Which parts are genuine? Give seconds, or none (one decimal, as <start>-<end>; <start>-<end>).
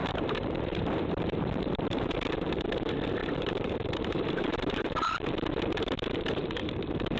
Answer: 2.6-3.2; 5.3-7.2